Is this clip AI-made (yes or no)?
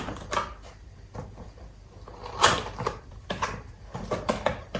yes